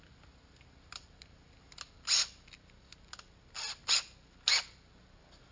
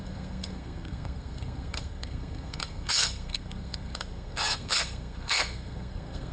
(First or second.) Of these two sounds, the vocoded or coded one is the second